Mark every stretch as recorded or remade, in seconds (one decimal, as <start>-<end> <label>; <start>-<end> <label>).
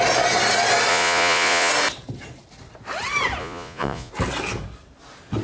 0.0-0.9 recorded; 0.9-1.7 remade; 1.7-3.4 recorded; 3.4-4.1 remade; 4.1-5.4 recorded